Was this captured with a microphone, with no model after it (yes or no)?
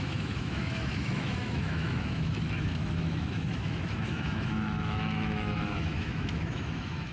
no